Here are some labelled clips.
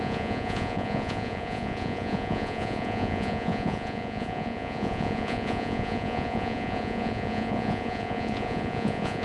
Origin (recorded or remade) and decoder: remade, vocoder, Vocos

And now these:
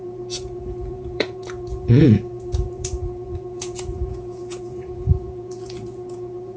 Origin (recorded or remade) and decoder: remade, vocoder, Vocos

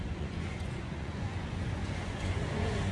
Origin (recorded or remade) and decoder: remade, vocoder, Vocos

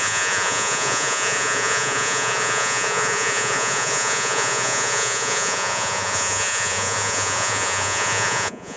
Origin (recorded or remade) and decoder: remade, vocoder, Vocos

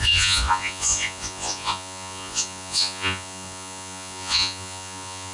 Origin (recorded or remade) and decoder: remade, vocoder, Vocos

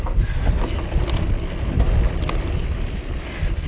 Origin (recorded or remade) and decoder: recorded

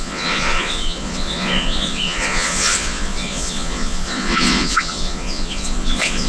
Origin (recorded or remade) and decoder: remade, vocoder, Vocos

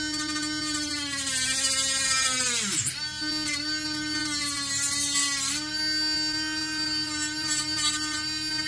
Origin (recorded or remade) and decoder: recorded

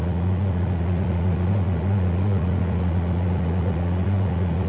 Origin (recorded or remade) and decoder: remade, vocoder, Vocos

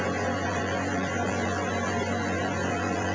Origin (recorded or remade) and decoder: remade, vocoder, Vocos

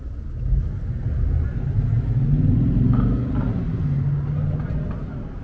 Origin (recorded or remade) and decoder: recorded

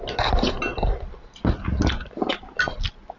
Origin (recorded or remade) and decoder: recorded